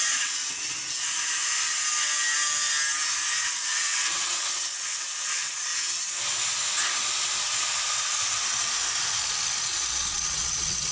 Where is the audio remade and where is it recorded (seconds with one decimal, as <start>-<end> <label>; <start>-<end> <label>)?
0.0-0.4 remade; 0.4-3.5 recorded; 3.5-5.7 remade; 5.7-9.6 recorded; 9.6-10.9 remade